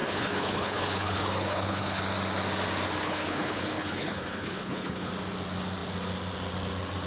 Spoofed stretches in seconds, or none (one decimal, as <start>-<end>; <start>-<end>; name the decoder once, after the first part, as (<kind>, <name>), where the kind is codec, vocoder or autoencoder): 0.0-2.0 (codec, HILCodec); 3.0-5.1